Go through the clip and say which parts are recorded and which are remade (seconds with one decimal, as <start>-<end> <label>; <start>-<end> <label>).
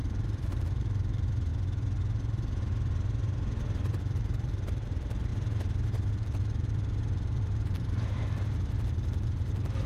0.0-1.5 remade; 1.5-4.0 recorded; 4.0-5.3 remade; 5.3-6.1 recorded; 6.1-9.9 remade